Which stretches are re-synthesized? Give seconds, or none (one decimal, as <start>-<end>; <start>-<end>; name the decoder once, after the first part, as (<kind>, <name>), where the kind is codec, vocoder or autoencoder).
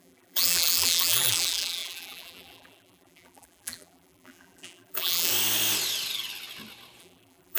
0.0-5.3 (vocoder, BigVGAN v2); 7.0-7.6